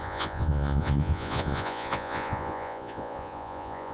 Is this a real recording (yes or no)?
no